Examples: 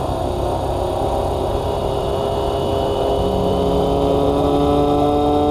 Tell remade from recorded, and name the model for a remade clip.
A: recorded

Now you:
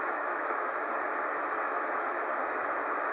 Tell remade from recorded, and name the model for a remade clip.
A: remade, autoencoder, DAC-VAE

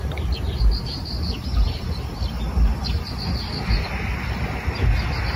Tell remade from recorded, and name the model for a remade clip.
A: recorded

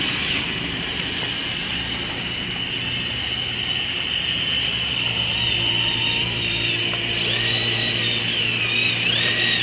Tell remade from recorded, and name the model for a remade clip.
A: recorded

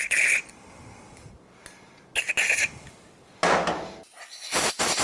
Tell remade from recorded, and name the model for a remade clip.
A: recorded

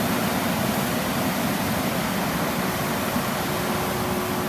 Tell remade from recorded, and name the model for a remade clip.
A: recorded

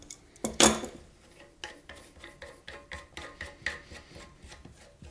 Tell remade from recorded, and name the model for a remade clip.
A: recorded